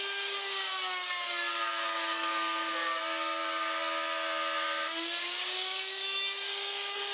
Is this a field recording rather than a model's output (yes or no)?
no